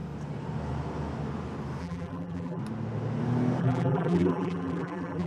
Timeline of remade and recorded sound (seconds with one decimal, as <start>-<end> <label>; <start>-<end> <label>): 0.0-1.8 recorded; 1.8-2.6 remade; 2.6-3.6 recorded; 3.6-5.3 remade